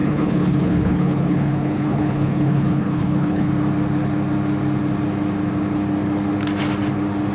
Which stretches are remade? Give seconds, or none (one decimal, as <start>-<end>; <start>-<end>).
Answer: 0.0-3.5